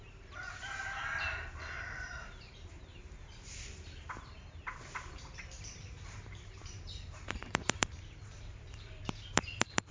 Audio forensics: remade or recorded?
remade